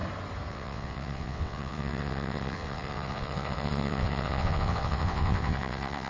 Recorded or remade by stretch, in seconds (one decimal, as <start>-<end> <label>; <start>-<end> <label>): 0.0-0.5 recorded; 0.5-6.1 remade